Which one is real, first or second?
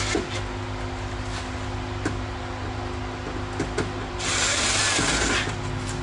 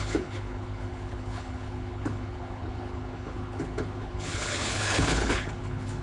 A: first